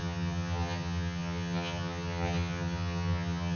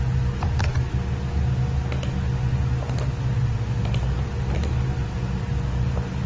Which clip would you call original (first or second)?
second